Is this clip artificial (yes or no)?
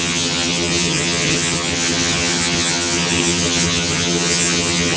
yes